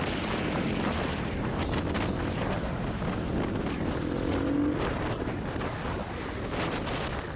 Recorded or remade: recorded